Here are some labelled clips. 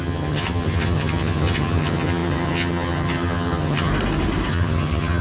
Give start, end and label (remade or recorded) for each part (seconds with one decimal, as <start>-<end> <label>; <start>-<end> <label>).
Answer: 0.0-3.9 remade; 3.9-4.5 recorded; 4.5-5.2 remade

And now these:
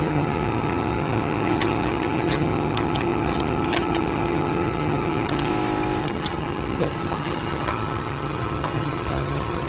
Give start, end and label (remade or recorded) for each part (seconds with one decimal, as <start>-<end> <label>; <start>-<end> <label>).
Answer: 0.0-5.5 remade; 5.5-6.0 recorded; 6.0-9.7 remade

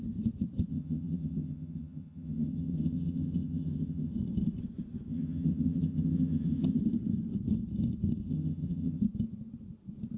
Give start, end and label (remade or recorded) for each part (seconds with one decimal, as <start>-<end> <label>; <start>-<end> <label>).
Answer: 0.0-0.7 recorded; 0.7-4.1 remade; 4.1-5.1 recorded; 5.1-6.8 remade; 6.8-8.3 recorded; 8.3-9.0 remade; 9.0-10.2 recorded

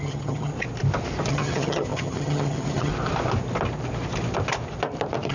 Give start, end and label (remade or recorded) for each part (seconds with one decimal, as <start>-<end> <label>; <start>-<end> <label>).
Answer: 0.0-0.5 remade; 0.5-1.3 recorded; 1.3-2.9 remade; 2.9-5.3 recorded

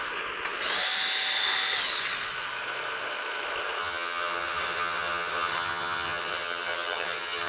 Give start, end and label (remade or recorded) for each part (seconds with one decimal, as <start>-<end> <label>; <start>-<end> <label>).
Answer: 0.0-3.8 recorded; 3.8-7.5 remade

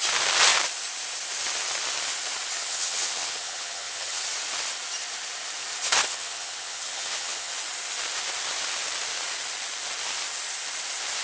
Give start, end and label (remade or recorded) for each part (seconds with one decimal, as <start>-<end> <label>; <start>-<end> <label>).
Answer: 0.0-2.6 recorded; 2.6-4.2 remade; 4.2-6.0 recorded; 6.0-7.5 remade; 7.5-11.2 recorded